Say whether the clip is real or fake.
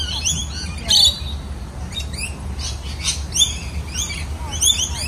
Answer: real